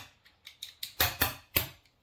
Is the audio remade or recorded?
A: recorded